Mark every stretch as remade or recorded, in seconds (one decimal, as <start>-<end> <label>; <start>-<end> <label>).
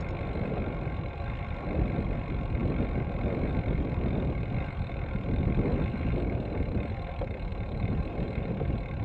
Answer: 0.0-7.5 recorded; 7.5-8.5 remade; 8.5-9.0 recorded